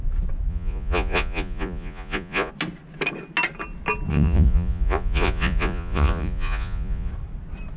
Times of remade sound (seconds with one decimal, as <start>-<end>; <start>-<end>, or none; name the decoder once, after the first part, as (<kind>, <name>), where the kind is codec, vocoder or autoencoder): 0.5-2.5 (vocoder, Vocos); 4.1-7.1